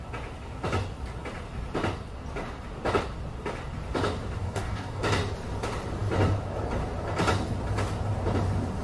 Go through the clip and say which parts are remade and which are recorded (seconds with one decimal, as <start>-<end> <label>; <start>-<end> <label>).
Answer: 0.0-4.4 recorded; 4.4-5.0 remade; 5.0-8.8 recorded

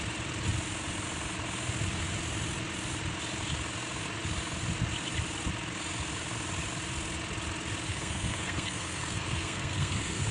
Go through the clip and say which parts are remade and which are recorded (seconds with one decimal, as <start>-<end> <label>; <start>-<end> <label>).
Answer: 0.0-7.9 recorded; 7.9-10.3 remade

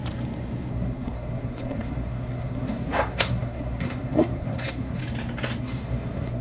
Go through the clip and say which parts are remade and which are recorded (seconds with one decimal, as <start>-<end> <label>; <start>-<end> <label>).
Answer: 0.0-0.7 recorded; 0.7-5.0 remade; 5.0-5.6 recorded; 5.6-6.4 remade

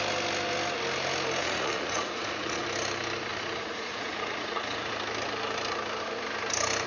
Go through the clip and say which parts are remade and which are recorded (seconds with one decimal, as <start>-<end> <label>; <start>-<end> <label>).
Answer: 0.0-1.4 recorded; 1.4-2.6 remade; 2.6-3.3 recorded; 3.3-4.9 remade; 4.9-6.9 recorded

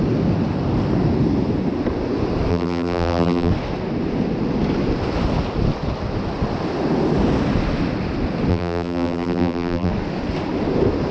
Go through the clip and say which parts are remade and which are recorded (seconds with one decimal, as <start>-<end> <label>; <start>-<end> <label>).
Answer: 0.0-2.5 recorded; 2.5-3.5 remade; 3.5-8.5 recorded; 8.5-9.9 remade; 9.9-11.1 recorded

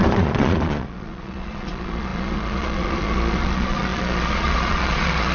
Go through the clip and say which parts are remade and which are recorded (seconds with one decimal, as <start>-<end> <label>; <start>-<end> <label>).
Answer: 0.0-5.3 remade

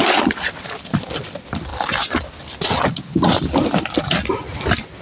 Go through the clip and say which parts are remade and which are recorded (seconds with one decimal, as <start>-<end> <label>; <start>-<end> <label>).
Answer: 0.0-1.7 remade; 1.7-5.0 recorded